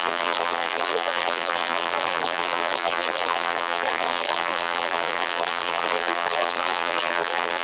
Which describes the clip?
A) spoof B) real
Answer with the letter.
A